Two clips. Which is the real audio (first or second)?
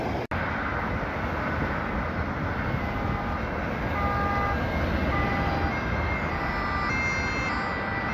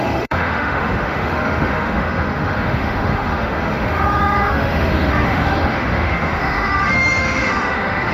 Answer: first